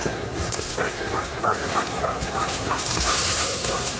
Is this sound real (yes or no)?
no